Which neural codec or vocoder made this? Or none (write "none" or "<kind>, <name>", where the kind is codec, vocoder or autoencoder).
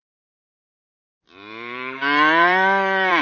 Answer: vocoder, BigVGAN v2